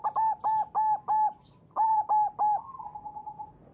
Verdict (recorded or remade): recorded